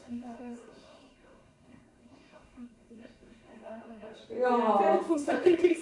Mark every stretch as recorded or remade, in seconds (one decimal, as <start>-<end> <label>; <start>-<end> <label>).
0.0-4.2 remade; 4.2-5.1 recorded; 5.1-5.8 remade